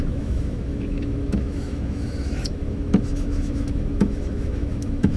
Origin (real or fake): fake